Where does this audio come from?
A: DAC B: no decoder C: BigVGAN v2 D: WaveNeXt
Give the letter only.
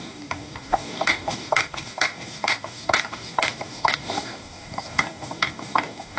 A